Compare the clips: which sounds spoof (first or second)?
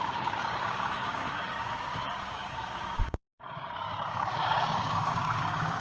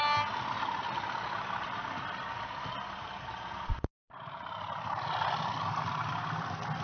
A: first